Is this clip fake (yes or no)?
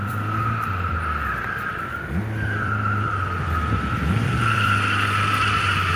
yes